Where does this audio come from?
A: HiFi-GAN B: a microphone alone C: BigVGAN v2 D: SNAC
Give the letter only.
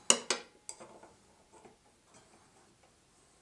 B